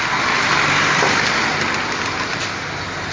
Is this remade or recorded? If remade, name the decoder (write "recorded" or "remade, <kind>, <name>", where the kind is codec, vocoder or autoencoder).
recorded